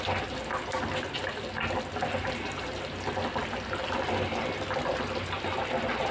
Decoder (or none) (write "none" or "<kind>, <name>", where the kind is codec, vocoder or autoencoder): none